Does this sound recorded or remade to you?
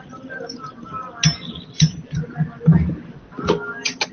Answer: recorded